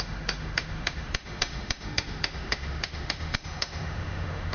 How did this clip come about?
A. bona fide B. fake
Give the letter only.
B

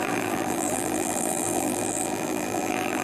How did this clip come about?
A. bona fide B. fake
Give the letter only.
B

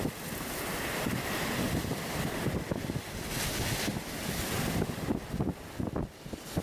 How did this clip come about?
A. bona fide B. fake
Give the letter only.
A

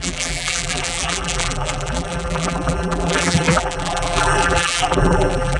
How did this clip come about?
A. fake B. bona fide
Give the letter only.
A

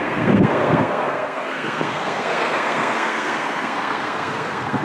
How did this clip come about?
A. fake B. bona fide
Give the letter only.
A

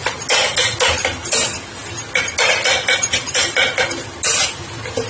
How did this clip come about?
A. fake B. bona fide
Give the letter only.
B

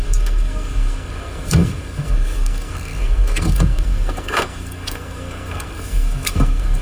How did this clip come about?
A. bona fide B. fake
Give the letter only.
B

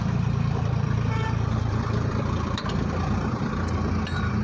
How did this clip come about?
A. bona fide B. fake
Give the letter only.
B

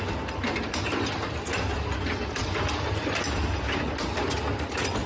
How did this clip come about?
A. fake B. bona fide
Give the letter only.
B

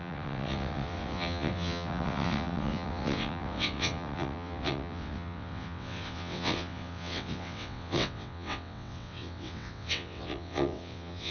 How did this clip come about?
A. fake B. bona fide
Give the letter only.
A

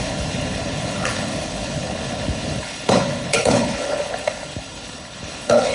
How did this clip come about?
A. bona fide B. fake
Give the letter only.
B